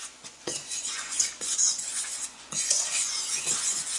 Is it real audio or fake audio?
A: fake